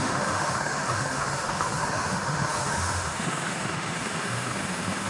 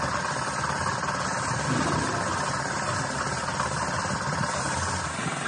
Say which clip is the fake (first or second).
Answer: first